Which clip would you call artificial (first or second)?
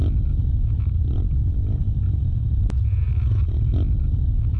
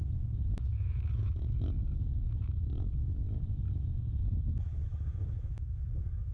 second